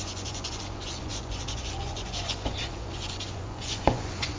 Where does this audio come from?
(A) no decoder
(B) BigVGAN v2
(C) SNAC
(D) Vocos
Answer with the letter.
D